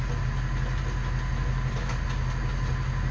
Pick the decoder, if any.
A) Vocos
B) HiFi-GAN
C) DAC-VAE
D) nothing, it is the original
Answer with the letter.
D